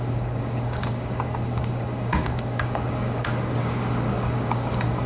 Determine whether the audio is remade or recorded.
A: remade